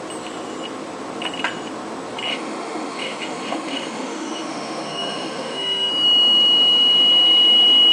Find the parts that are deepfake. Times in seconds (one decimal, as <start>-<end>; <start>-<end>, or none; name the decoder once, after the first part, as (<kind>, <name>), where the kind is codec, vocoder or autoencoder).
2.3-5.9 (autoencoder, DAC-VAE)